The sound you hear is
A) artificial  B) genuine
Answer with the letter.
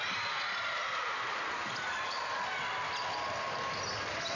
B